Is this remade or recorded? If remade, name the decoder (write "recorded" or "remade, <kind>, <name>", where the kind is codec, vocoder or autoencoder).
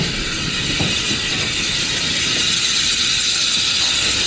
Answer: recorded